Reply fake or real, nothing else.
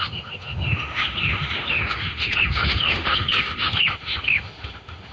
fake